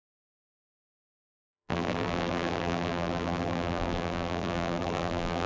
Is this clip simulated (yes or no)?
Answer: yes